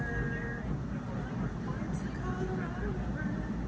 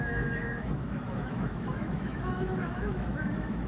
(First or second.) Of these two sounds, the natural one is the first